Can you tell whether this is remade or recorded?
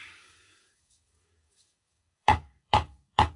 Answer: remade